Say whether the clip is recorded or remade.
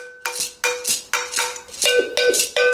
recorded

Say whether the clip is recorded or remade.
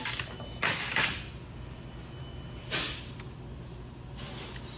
recorded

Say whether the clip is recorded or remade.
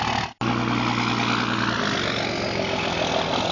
recorded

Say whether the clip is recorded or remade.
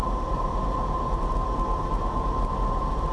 recorded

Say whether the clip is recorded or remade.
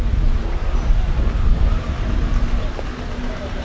recorded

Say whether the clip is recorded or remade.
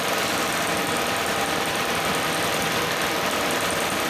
remade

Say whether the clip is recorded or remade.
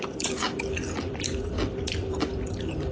remade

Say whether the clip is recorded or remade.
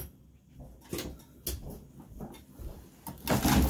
recorded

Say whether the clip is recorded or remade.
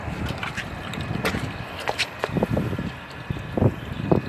remade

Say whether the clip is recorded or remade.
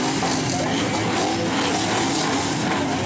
recorded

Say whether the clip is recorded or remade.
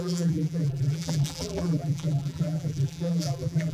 remade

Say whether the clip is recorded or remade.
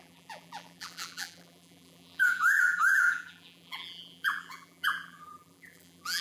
remade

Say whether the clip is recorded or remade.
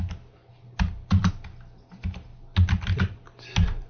recorded